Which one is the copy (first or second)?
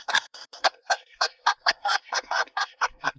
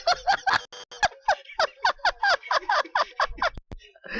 first